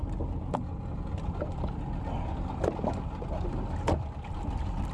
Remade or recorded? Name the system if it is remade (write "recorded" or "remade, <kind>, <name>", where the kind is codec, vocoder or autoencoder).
recorded